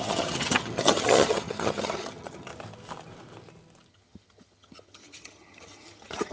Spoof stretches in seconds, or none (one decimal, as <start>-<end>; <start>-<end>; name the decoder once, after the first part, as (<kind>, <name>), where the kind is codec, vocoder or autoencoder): 0.0-2.5 (vocoder, HiFi-GAN); 3.9-6.3